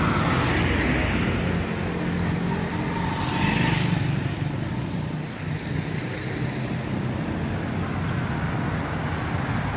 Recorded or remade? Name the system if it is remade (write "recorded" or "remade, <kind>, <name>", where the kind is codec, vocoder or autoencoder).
recorded